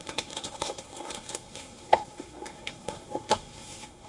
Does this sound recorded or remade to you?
remade